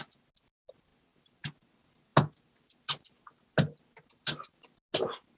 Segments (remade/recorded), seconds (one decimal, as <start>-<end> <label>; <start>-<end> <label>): 0.0-5.4 recorded